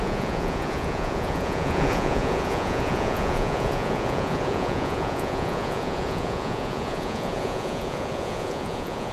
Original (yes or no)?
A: no